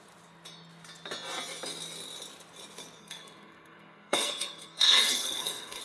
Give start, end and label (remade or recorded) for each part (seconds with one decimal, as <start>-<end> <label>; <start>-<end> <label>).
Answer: 0.0-3.0 recorded; 3.0-5.8 remade